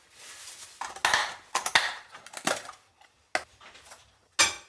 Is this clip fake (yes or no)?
no